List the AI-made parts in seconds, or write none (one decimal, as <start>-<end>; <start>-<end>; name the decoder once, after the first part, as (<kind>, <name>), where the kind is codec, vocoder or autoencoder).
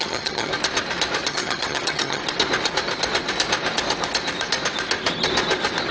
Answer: 0.0-0.5 (vocoder, HiFi-GAN); 1.3-2.2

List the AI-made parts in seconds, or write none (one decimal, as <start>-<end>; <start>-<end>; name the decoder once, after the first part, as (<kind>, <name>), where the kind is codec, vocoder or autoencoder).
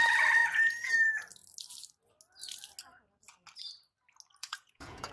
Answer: 0.4-0.9 (vocoder, Vocos); 4.4-5.1